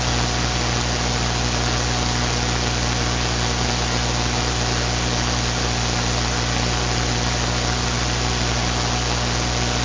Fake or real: real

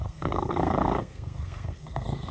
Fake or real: fake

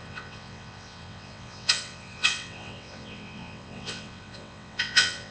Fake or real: fake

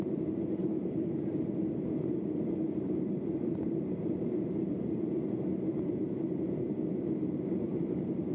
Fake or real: fake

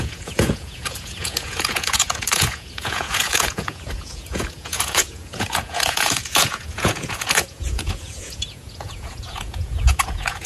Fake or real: fake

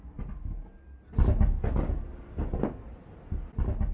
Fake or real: real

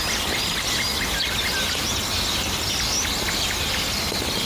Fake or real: real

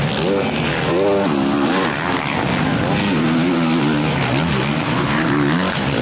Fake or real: real